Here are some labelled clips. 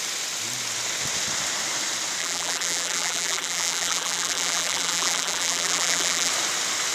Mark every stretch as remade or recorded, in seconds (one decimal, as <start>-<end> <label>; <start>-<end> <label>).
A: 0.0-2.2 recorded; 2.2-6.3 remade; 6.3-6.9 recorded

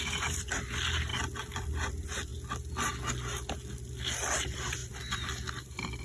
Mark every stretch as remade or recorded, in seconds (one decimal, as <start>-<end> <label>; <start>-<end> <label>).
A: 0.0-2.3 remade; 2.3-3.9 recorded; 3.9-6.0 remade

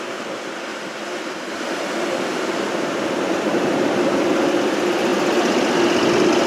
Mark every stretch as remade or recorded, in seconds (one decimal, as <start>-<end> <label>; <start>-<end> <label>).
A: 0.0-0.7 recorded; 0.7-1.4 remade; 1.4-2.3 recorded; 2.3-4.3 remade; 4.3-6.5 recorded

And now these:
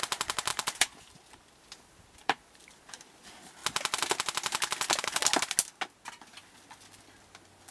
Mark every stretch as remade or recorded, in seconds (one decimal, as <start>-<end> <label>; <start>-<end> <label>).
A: 0.0-0.5 recorded; 0.5-1.4 remade; 1.4-2.2 recorded; 2.2-3.1 remade; 3.1-7.7 recorded